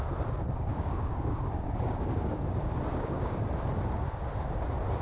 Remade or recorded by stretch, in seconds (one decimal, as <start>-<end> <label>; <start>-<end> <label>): 0.0-0.7 recorded; 0.7-3.7 remade; 3.7-5.0 recorded